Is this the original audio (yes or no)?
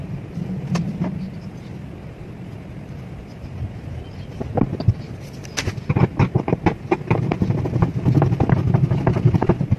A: yes